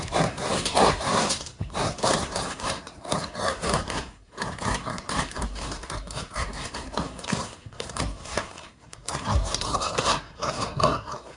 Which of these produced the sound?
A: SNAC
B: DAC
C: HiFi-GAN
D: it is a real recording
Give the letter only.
A